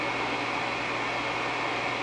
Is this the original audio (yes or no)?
yes